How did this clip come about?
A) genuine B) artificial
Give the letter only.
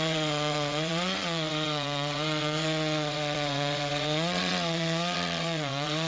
B